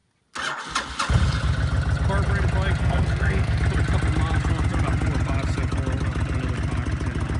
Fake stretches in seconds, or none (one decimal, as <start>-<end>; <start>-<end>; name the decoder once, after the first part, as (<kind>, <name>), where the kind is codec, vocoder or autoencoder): 2.8-3.6 (codec, SNAC)